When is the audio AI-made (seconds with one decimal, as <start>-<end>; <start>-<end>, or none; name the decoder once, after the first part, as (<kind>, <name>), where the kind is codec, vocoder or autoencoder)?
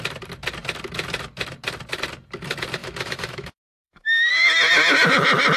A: 2.8-4.3 (autoencoder, DAC-VAE)